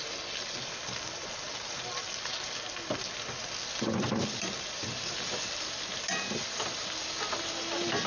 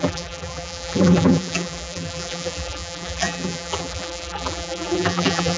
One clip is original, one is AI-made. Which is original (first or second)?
first